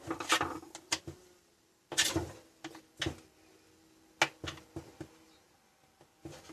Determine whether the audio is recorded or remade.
recorded